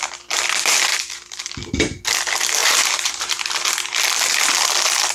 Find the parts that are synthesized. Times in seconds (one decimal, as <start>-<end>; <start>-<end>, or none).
0.9-1.5; 2.6-3.3

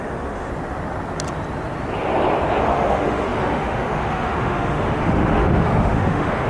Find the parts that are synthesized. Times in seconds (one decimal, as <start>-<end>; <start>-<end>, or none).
0.0-0.5; 2.6-6.5